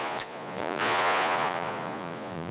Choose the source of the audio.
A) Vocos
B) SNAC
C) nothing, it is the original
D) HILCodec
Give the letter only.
A